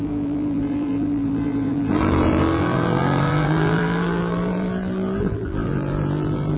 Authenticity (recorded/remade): remade